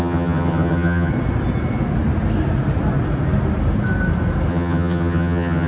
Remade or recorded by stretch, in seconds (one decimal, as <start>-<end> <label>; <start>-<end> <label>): 0.0-1.1 remade; 1.1-4.5 recorded; 4.5-5.7 remade